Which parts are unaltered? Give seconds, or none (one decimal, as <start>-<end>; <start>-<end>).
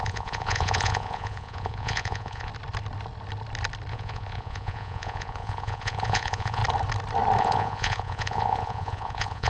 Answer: 2.5-3.9; 6.6-7.4